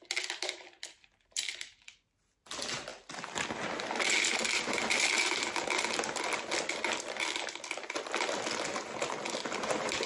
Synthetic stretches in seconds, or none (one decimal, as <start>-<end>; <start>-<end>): none